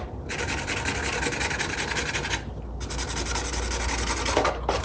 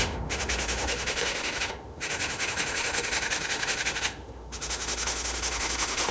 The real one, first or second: first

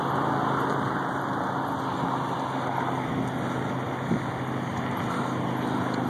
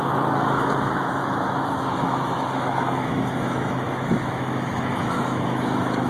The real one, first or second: first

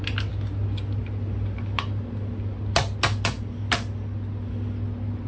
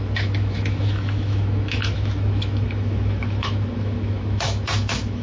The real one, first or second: first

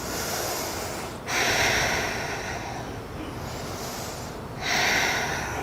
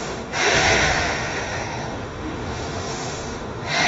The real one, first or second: first